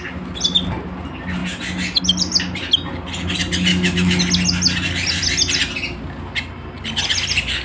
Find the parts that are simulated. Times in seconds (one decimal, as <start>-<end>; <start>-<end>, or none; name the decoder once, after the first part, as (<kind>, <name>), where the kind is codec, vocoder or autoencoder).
3.7-4.2 (autoencoder, DAC-VAE)